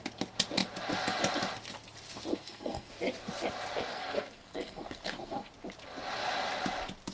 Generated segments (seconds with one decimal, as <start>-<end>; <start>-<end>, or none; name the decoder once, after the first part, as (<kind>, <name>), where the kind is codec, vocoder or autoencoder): 2.3-2.9 (codec, SNAC); 3.9-5.5